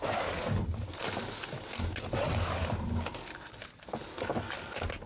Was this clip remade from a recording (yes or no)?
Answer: no